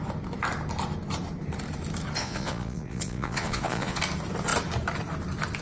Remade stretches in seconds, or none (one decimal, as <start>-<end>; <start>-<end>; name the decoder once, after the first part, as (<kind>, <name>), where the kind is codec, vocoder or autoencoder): 2.2-4.0 (vocoder, Vocos)